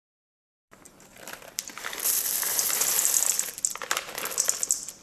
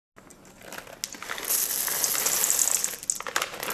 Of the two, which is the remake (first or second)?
first